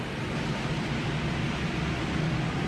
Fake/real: fake